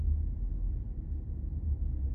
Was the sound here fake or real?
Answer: real